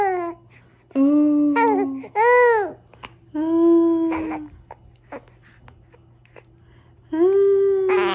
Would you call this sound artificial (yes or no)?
no